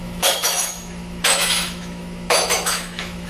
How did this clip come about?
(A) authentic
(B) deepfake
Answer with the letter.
B